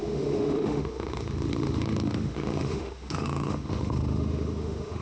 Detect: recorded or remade remade